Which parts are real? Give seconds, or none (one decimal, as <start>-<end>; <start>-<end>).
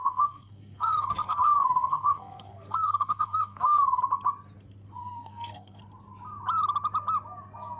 4.0-5.0; 5.8-7.8